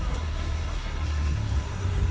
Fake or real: fake